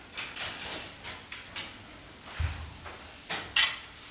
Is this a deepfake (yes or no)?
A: no